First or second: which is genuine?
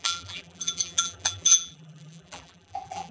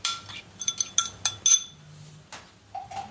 second